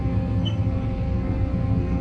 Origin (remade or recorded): remade